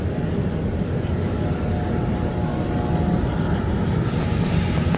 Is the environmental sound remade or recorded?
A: recorded